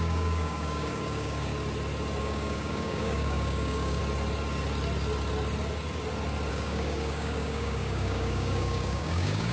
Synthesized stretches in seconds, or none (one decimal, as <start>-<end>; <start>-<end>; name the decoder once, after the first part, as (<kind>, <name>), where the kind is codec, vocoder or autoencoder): 0.0-1.5 (codec, DAC); 2.2-4.0; 6.5-9.5